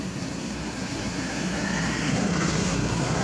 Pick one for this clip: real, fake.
fake